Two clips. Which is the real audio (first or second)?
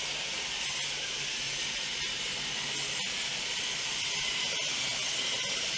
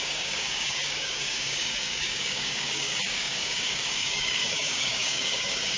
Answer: first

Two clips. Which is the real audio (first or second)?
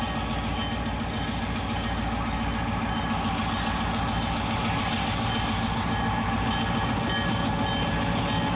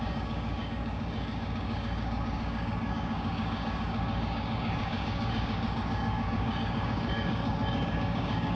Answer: first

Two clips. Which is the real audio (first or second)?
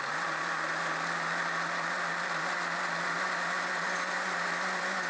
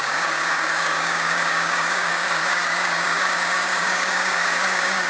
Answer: first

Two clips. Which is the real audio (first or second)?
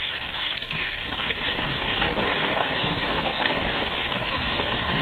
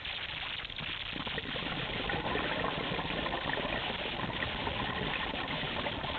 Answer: second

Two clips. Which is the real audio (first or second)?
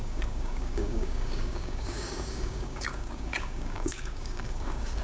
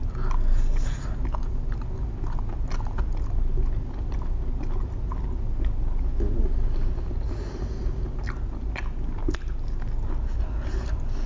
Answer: second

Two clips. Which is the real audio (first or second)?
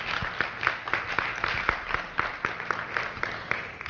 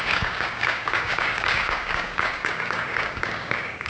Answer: first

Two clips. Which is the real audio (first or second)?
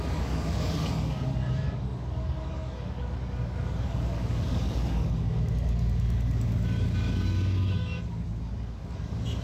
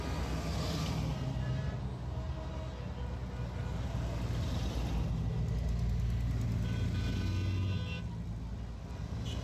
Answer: second